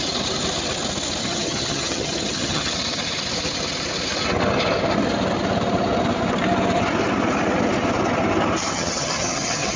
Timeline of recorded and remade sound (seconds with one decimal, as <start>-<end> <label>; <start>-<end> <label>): 0.0-1.2 recorded; 1.2-2.7 remade; 2.7-8.7 recorded; 8.7-9.8 remade